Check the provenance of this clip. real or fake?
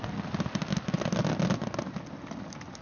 real